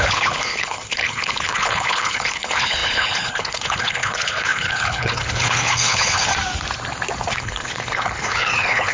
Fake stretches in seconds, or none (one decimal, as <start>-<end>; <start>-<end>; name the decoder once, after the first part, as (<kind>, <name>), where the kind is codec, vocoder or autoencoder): 0.0-6.3 (codec, HILCodec); 7.3-8.9